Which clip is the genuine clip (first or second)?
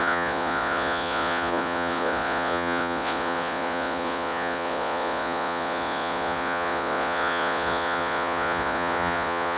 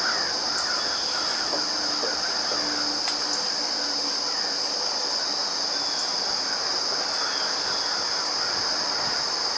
second